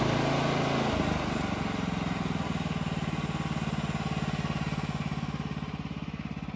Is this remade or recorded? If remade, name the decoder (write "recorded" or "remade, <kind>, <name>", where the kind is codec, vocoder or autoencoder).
recorded